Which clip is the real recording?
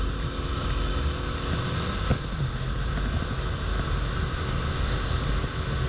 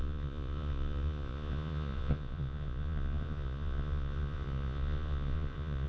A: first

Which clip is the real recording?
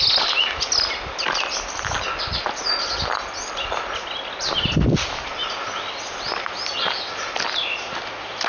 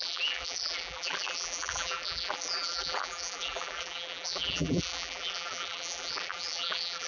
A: first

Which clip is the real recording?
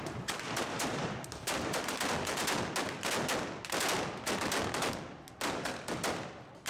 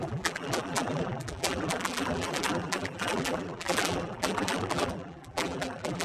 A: first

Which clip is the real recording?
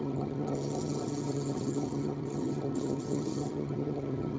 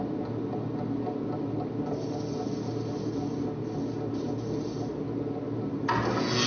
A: second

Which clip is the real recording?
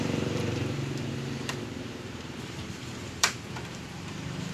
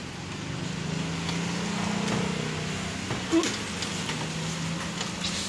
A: second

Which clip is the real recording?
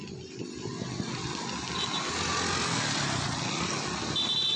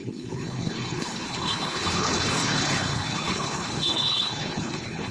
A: first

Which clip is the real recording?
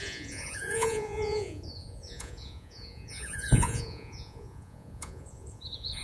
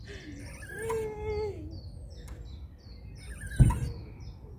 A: second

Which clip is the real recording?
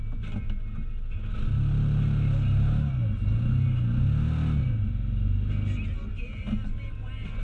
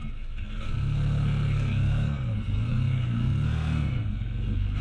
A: first